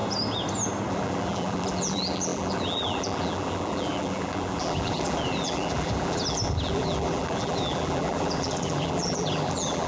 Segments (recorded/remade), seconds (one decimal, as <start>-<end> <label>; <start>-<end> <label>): 0.0-0.9 recorded; 0.9-9.9 remade